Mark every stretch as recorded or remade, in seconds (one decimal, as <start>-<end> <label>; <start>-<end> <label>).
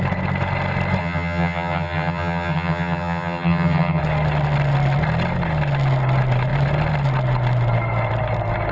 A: 0.0-1.0 recorded; 1.0-4.0 remade; 4.0-8.7 recorded